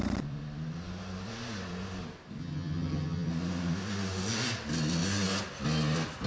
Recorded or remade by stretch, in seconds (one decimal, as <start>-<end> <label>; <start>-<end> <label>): 0.0-2.4 recorded; 2.4-3.3 remade; 3.3-6.3 recorded